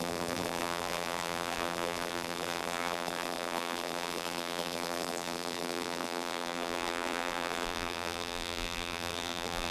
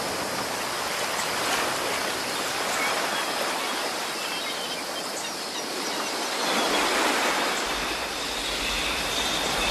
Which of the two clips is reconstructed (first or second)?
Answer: first